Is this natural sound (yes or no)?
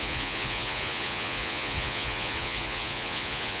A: no